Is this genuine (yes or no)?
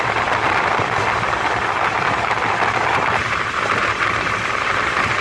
yes